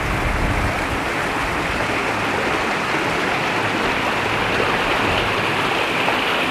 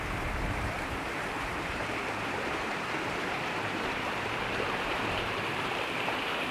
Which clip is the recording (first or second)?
first